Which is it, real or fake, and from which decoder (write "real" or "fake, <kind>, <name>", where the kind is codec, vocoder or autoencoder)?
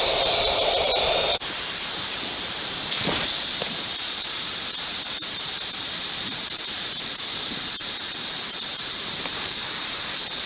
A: fake, vocoder, BigVGAN v2